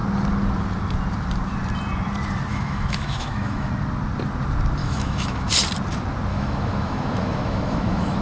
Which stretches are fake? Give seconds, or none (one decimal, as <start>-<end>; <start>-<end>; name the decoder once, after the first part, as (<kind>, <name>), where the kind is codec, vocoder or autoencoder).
2.5-3.7 (autoencoder, DAC-VAE); 4.8-5.5; 6.3-8.2